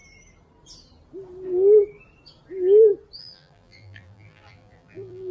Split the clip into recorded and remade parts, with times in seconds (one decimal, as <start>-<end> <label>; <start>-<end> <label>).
0.0-3.2 recorded; 3.2-5.3 remade